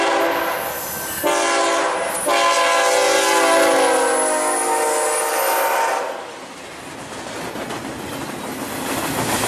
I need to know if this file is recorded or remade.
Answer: recorded